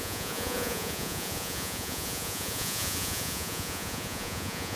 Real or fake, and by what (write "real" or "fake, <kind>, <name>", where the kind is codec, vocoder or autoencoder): fake, vocoder, Vocos